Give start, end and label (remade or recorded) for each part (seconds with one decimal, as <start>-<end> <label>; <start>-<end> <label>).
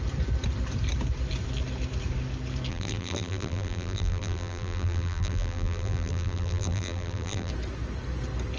0.0-2.7 recorded; 2.7-7.5 remade; 7.5-8.6 recorded